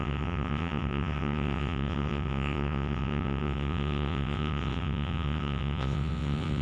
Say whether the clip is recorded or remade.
remade